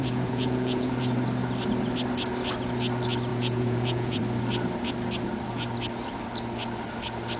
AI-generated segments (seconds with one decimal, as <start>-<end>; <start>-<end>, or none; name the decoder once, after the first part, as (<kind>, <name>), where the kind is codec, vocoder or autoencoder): 0.0-1.0 (vocoder, Vocos); 3.3-4.2